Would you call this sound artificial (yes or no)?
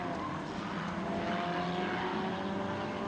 no